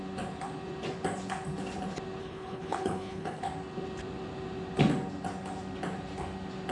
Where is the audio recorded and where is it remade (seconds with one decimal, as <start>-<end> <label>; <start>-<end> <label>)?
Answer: 0.0-2.2 recorded; 2.2-3.4 remade; 3.4-6.7 recorded